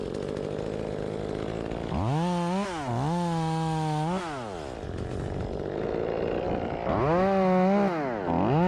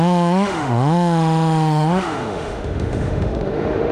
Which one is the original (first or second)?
first